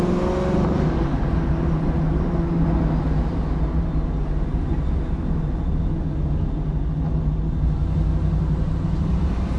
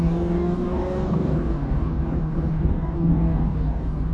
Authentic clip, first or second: first